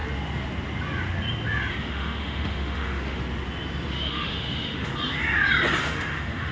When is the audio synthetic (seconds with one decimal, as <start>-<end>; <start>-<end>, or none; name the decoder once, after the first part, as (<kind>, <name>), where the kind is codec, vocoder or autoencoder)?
1.7-3.2 (autoencoder, DAC-VAE); 3.9-4.9; 5.8-6.5